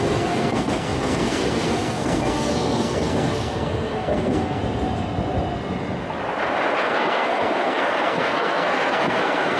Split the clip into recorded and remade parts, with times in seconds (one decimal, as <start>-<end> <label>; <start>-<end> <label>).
0.0-4.6 remade; 4.6-6.8 recorded; 6.8-9.6 remade